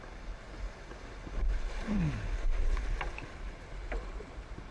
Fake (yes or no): no